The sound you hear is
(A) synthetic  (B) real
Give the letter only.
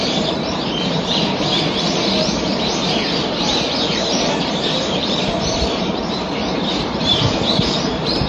A